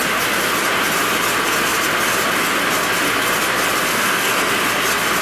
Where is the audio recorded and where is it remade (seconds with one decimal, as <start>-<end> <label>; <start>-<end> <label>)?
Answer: 0.0-3.9 recorded; 3.9-4.5 remade; 4.5-5.2 recorded